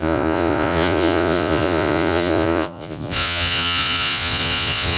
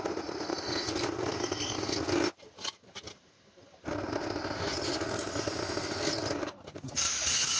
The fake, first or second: first